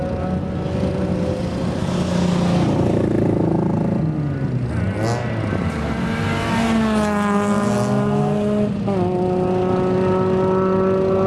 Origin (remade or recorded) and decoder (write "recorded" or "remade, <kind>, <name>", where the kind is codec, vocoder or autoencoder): recorded